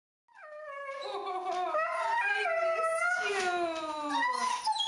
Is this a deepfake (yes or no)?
no